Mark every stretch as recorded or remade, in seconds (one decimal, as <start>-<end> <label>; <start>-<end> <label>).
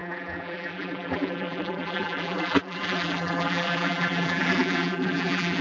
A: 0.0-5.6 remade